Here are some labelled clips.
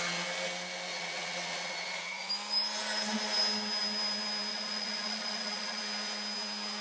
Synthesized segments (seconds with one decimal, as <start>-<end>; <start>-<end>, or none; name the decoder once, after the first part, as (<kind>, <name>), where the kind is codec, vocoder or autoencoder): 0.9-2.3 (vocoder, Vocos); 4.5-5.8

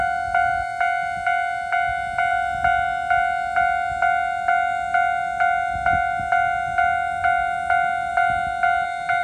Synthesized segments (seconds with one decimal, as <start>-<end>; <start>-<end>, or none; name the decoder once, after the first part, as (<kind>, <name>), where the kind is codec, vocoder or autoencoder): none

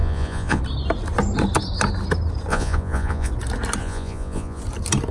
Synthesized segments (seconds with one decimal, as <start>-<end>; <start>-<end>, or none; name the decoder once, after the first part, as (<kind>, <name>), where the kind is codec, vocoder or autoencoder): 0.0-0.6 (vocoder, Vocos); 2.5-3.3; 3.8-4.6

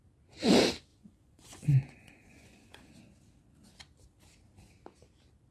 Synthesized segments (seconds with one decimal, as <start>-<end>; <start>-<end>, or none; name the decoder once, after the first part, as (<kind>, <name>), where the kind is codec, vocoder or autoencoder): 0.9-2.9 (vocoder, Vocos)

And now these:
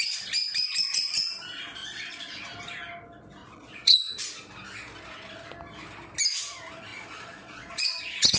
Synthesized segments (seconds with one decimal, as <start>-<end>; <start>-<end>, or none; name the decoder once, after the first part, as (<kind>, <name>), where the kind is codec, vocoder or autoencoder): 1.8-2.5 (vocoder, Vocos); 3.4-4.1; 6.9-8.4

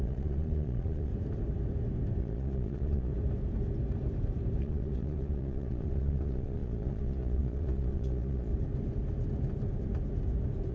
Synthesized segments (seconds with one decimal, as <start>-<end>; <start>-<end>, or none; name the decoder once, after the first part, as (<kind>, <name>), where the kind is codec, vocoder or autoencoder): 0.0-1.1 (vocoder, Vocos); 2.2-3.1; 4.6-8.5